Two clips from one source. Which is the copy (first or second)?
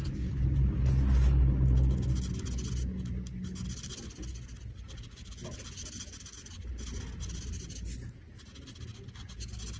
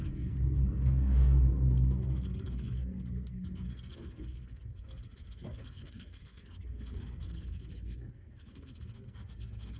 second